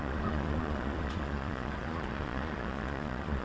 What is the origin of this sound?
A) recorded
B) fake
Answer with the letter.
B